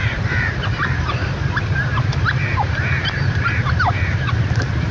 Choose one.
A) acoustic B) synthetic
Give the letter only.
B